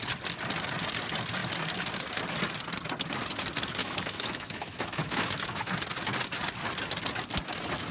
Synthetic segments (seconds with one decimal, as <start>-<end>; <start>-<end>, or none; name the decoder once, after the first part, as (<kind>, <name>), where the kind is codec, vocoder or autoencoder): 3.8-5.8 (autoencoder, DAC-VAE)